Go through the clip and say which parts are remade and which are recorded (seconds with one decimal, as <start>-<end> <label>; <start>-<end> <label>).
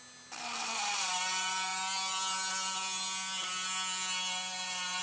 0.0-5.0 recorded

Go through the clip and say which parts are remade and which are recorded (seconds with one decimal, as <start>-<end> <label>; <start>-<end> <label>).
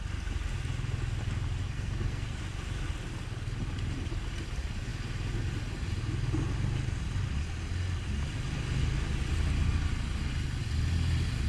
0.0-1.6 recorded; 1.6-2.4 remade; 2.4-11.5 recorded